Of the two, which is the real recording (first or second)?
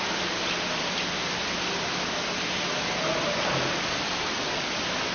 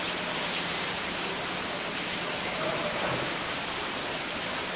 first